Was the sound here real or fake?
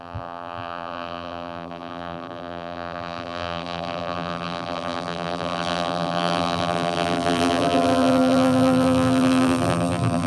fake